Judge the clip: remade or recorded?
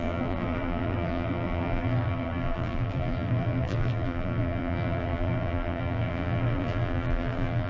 remade